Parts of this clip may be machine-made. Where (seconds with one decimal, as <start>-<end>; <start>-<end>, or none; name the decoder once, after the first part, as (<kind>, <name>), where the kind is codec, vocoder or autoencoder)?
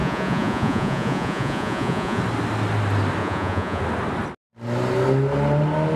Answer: 0.0-2.2 (vocoder, Vocos); 3.2-3.8